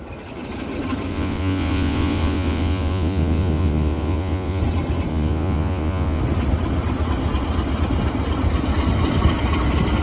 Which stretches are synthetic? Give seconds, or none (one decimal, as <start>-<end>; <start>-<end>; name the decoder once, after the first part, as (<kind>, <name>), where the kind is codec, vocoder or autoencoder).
1.1-4.6 (vocoder, Vocos); 5.1-6.2